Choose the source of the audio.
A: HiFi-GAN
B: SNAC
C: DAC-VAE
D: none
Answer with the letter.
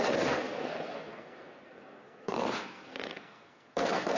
B